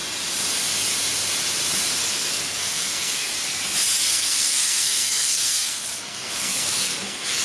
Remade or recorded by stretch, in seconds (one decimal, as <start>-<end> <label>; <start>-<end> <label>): 0.0-2.1 recorded; 2.1-3.3 remade; 3.3-4.1 recorded; 4.1-7.4 remade